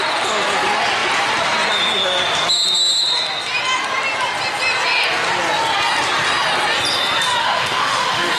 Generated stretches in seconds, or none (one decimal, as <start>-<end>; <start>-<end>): 7.4-8.4